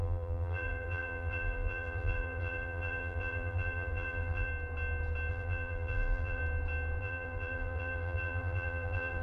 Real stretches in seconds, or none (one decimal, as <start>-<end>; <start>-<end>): 4.5-5.3; 6.4-7.0